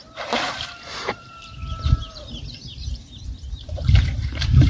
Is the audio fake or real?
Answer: fake